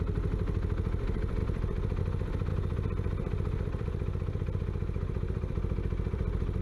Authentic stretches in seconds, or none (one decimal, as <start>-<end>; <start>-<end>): 0.0-1.4; 2.0-2.5